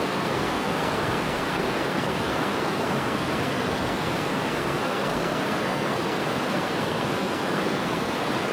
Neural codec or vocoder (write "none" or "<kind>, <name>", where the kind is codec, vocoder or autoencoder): codec, SNAC